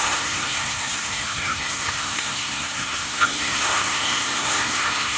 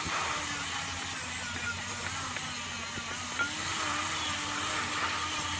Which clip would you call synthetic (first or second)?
first